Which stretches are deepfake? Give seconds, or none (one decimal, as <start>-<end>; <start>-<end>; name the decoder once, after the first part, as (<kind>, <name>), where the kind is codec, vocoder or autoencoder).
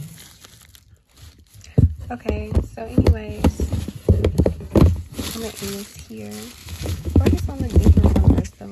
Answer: 6.6-7.4 (autoencoder, DAC-VAE)